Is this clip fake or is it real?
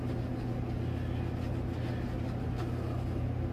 real